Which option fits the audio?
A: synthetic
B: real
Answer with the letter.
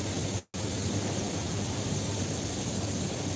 B